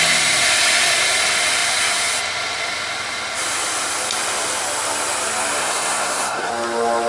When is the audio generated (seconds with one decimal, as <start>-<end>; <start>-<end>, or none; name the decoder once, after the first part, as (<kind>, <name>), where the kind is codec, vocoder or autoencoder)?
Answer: 5.6-6.5 (codec, SNAC)